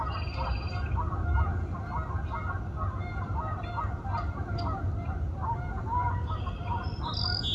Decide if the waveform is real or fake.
real